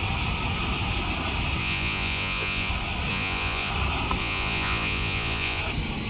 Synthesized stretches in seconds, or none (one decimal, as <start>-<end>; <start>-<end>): 1.6-2.7; 3.1-3.7; 4.2-5.6